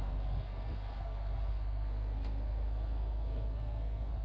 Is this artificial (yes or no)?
yes